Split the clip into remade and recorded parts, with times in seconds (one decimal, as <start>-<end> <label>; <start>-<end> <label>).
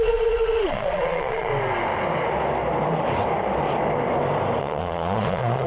0.0-1.5 remade; 1.5-4.6 recorded; 4.6-5.7 remade